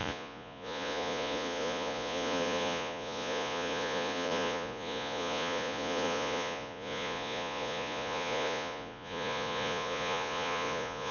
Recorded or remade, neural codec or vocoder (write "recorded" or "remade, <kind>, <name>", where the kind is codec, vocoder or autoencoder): remade, vocoder, Vocos